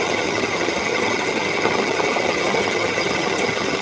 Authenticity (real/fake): fake